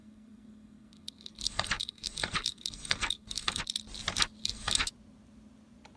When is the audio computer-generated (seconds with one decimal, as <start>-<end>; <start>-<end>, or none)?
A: 0.0-3.6; 4.4-4.9